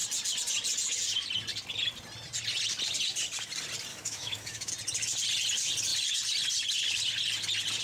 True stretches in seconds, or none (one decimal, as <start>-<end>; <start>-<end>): 0.0-3.9; 4.7-7.8